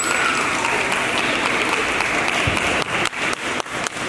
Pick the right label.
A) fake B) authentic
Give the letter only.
B